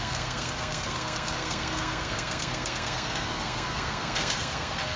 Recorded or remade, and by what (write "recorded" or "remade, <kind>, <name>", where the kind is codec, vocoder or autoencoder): remade, codec, SNAC